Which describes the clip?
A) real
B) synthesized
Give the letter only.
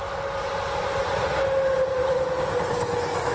A